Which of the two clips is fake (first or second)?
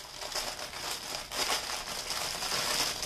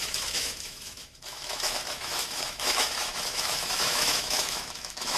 second